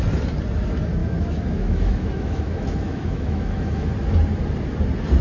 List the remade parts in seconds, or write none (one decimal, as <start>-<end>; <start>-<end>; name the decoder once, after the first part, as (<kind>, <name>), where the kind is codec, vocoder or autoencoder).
1.0-3.9 (autoencoder, DAC-VAE)

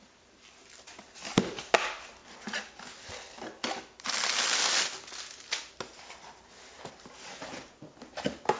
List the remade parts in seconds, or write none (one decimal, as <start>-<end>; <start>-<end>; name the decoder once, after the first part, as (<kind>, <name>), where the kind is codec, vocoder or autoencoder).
none

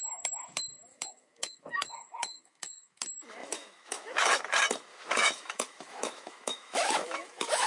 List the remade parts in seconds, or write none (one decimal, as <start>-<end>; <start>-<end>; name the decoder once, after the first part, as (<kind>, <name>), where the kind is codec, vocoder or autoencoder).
0.9-3.0 (autoencoder, DAC-VAE); 3.4-4.4; 4.9-7.7